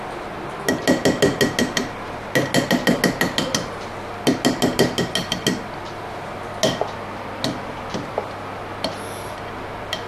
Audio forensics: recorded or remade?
recorded